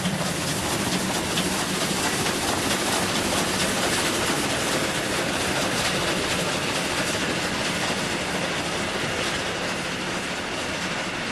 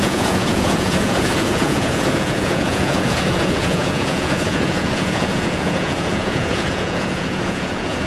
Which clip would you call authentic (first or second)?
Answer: first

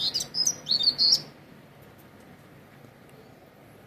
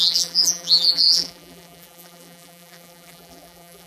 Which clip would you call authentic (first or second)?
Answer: first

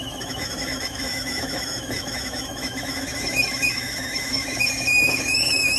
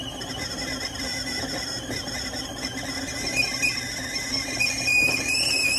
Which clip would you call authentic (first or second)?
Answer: second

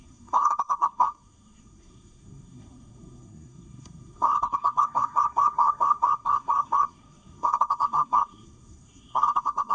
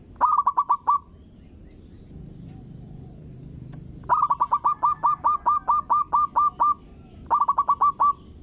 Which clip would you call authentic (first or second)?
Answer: second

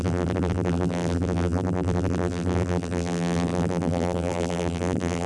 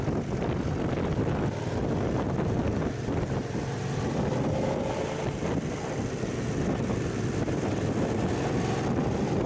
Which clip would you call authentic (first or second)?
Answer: second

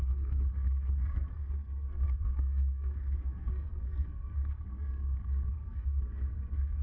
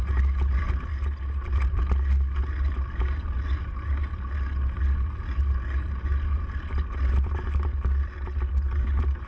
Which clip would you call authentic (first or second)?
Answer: second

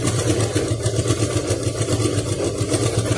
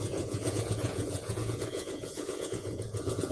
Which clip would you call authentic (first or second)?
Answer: first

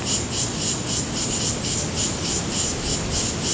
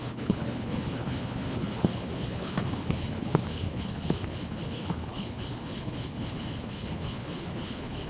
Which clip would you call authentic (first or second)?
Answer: first